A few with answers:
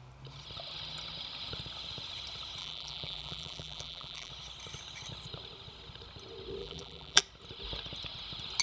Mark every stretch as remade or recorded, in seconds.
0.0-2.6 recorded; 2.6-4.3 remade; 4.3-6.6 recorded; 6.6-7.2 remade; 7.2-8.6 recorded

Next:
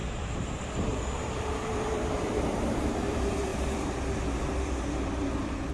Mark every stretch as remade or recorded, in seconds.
0.0-3.5 remade; 3.5-5.7 recorded

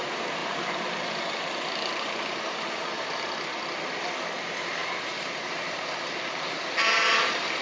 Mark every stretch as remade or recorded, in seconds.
0.0-0.4 recorded; 0.4-3.3 remade; 3.3-4.8 recorded; 4.8-7.6 remade

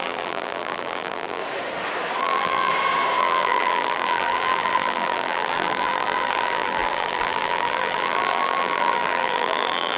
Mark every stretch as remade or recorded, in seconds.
0.0-1.4 remade; 1.4-2.2 recorded; 2.2-2.7 remade; 2.7-3.2 recorded; 3.2-10.0 remade

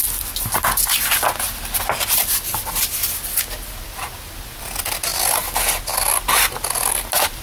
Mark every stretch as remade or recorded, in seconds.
0.0-7.4 recorded

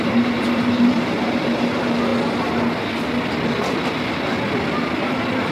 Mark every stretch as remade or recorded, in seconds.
0.0-2.1 remade; 2.1-5.5 recorded